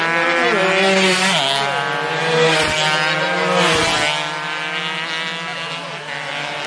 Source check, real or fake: real